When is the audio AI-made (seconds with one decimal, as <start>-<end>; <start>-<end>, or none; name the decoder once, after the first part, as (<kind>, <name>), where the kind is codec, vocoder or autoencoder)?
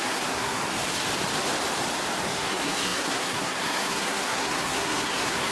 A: 0.0-0.6 (codec, SNAC); 2.3-5.5